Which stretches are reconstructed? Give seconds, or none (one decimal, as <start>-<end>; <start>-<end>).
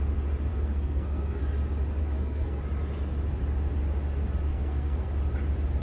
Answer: 0.5-1.4; 2.0-2.6; 4.5-5.1